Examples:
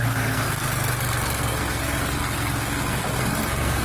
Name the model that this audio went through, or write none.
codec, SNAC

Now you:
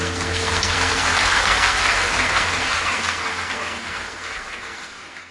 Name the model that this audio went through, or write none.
codec, SNAC